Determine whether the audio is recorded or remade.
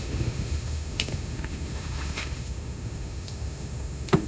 remade